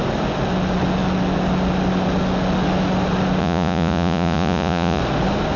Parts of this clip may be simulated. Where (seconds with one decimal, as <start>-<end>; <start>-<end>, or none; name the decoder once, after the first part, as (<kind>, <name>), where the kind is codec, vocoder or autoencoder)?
3.4-5.0 (vocoder, Vocos)